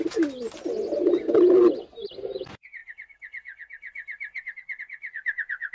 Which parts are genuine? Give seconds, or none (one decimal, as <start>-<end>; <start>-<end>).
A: 0.0-5.7